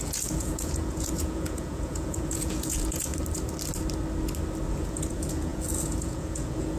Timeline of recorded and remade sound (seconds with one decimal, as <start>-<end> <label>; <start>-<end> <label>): 0.0-3.1 remade; 3.1-4.7 recorded; 4.7-6.8 remade